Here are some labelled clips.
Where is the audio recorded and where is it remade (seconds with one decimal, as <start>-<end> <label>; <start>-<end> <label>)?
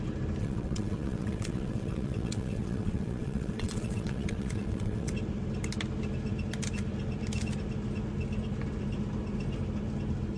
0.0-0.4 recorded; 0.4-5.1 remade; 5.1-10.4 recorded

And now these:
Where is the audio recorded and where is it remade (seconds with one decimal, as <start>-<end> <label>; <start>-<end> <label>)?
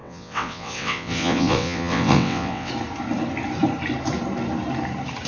0.0-2.7 remade; 2.7-5.3 recorded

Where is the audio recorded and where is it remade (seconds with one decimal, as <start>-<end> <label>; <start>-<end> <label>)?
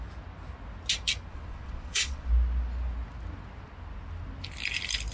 0.0-1.3 recorded; 1.3-2.3 remade; 2.3-5.1 recorded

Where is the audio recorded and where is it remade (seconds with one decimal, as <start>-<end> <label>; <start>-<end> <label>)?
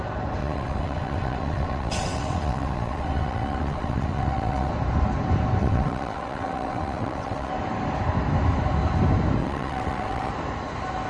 0.0-0.4 recorded; 0.4-4.7 remade; 4.7-5.6 recorded; 5.6-7.5 remade; 7.5-9.4 recorded; 9.4-10.3 remade; 10.3-11.1 recorded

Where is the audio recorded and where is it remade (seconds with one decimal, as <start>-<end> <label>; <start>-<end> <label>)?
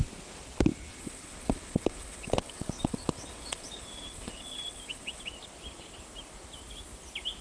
0.0-0.9 recorded; 0.9-5.3 remade; 5.3-7.4 recorded